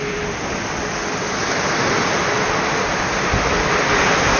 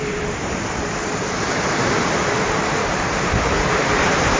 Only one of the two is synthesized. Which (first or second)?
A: second